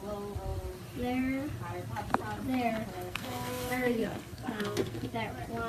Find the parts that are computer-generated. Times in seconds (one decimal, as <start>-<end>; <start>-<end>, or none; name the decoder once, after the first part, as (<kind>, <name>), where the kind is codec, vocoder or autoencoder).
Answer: 2.9-5.1 (codec, SNAC)